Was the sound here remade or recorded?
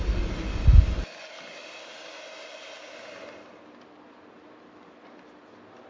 recorded